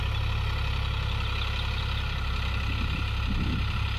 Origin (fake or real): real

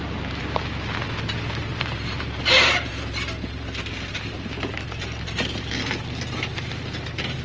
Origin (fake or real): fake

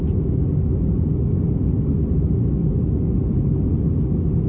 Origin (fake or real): real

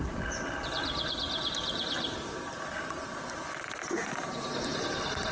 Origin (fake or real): fake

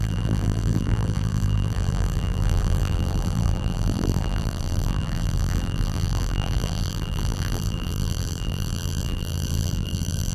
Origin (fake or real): fake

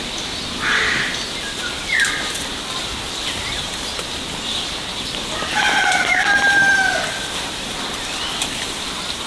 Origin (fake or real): fake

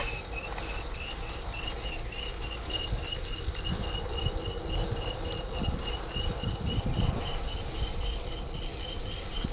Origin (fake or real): real